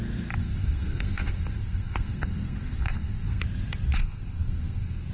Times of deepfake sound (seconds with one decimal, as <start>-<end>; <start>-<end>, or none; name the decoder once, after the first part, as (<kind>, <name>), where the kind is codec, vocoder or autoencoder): 0.4-3.4 (codec, SNAC); 4.0-5.1